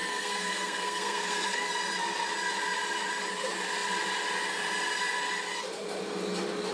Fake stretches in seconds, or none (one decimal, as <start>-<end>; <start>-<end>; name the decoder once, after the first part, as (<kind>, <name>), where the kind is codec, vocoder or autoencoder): 0.0-1.7 (codec, SNAC)